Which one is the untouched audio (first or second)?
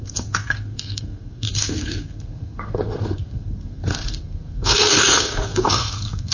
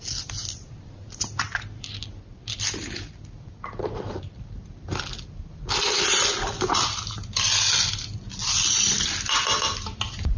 second